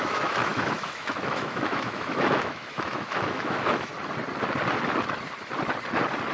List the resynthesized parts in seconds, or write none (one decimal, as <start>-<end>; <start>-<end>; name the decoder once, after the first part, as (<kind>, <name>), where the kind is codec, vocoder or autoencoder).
0.0-3.9 (autoencoder, DAC-VAE)